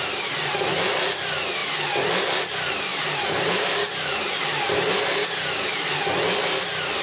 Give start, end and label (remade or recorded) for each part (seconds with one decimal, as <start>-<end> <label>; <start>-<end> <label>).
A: 0.0-2.9 recorded; 2.9-6.0 remade; 6.0-7.0 recorded